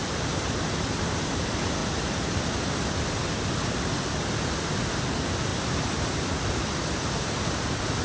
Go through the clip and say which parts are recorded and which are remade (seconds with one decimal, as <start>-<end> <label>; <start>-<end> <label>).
0.0-5.5 remade; 5.5-6.3 recorded; 6.3-8.0 remade